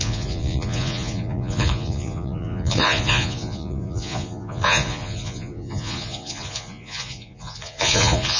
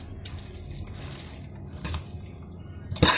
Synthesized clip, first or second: first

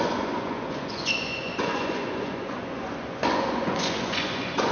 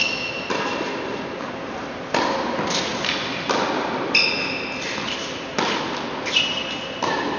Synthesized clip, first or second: first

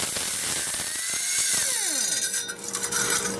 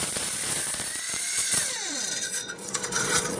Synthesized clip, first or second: second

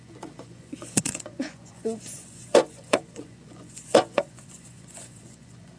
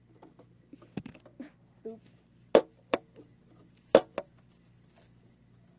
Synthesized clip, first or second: first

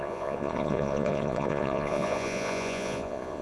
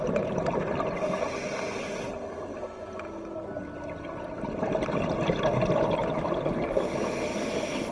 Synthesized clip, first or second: first